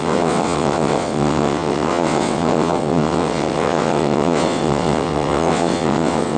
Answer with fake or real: fake